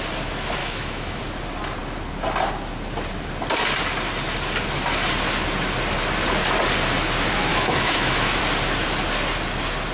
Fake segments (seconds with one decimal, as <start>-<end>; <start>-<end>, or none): 0.6-1.2; 7.5-8.4